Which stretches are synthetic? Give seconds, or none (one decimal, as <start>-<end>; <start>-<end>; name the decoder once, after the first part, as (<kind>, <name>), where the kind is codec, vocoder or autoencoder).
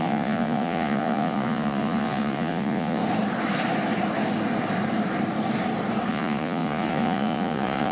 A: 0.0-3.0 (vocoder, Vocos); 6.1-7.9